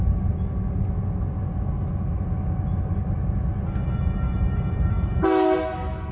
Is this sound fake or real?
real